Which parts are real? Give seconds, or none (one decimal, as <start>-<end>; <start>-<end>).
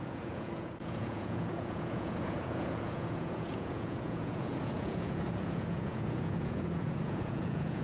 none